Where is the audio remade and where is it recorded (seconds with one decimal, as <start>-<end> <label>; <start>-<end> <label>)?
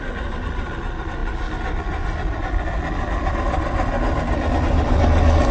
0.0-5.5 recorded